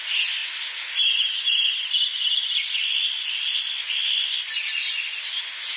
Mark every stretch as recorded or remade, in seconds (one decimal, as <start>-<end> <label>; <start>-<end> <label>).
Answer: 0.0-5.8 recorded